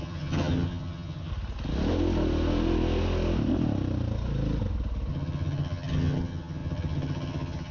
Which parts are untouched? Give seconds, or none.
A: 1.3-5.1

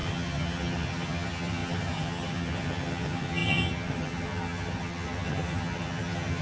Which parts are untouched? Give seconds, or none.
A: none

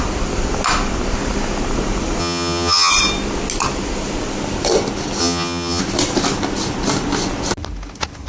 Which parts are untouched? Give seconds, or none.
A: 0.0-2.2; 2.9-5.2; 5.8-8.3